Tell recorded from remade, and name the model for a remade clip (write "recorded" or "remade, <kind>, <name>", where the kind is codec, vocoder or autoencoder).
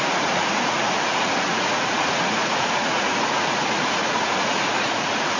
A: remade, vocoder, Vocos